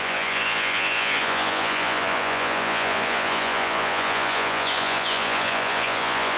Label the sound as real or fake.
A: fake